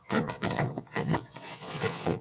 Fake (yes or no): yes